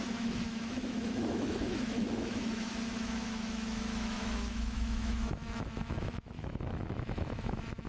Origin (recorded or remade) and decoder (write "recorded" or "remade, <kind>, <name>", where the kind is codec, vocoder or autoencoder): remade, autoencoder, DAC-VAE